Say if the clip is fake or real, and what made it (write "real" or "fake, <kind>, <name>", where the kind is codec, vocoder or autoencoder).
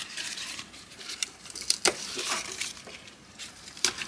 fake, vocoder, BigVGAN v2